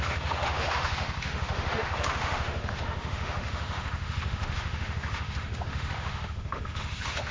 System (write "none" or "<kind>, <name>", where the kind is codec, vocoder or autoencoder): autoencoder, DAC-VAE